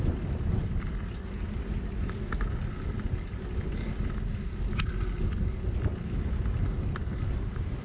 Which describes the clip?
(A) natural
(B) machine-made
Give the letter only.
A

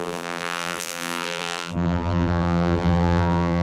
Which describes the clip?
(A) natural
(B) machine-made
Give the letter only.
B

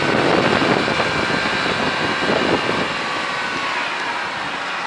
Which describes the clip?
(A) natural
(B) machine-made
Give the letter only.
A